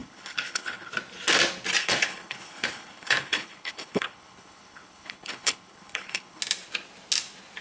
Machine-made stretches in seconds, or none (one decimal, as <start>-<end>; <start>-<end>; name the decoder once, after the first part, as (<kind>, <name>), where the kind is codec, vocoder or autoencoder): 0.0-0.9 (codec, HILCodec); 1.8-6.4